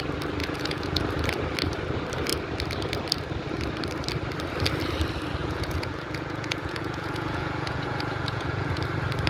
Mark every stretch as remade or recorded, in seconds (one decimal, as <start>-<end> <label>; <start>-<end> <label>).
0.0-0.4 recorded; 0.4-1.0 remade; 1.0-5.4 recorded; 5.4-8.8 remade; 8.8-9.3 recorded